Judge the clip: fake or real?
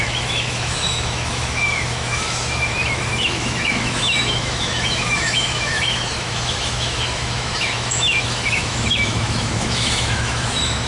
fake